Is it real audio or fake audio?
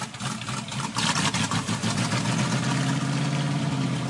real